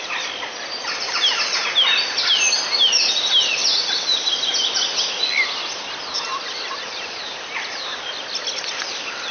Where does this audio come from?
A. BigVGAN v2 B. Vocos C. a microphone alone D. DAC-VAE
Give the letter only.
C